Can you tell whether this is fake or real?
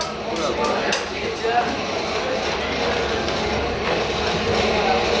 real